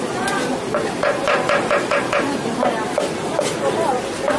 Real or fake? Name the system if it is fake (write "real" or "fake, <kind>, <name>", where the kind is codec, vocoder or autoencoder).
real